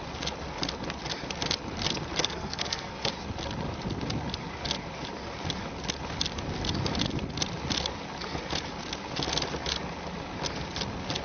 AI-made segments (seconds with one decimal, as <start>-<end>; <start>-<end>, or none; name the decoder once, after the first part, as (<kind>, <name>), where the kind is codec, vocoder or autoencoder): 2.2-3.1 (codec, SNAC)